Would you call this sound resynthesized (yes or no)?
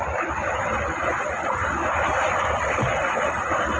no